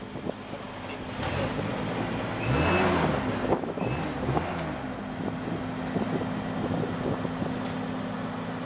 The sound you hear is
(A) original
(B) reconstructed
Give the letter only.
A